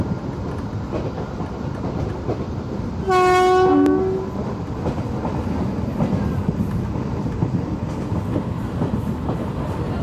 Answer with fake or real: real